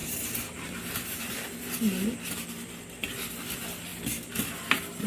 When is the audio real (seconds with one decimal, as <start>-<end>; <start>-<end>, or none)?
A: 1.2-5.1

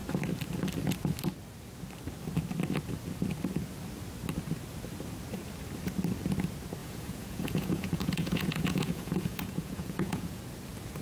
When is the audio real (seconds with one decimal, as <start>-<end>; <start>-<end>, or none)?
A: 0.0-6.8; 10.4-11.0

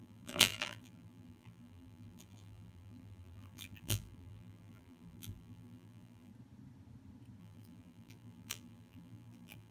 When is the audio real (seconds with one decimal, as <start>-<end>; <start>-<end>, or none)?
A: 6.3-7.4

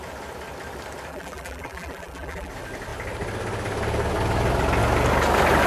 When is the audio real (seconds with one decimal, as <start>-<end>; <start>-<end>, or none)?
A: 0.0-1.1; 2.5-5.7

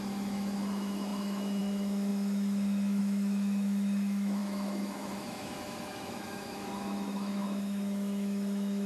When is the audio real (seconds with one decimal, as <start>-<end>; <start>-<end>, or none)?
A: none

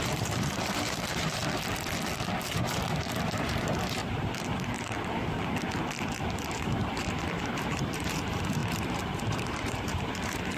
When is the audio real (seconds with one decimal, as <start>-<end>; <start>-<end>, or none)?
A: 1.4-3.0; 4.0-7.4

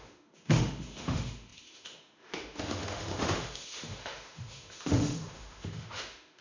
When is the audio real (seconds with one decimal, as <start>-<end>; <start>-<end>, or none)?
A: none

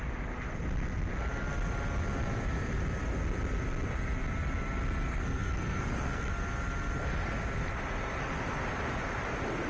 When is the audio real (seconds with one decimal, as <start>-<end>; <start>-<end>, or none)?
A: 0.0-5.1; 6.3-9.7